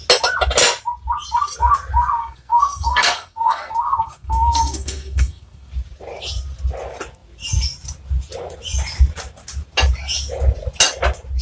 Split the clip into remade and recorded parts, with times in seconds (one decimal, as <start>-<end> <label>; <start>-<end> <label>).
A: 0.0-2.2 recorded; 2.2-5.7 remade; 5.7-11.4 recorded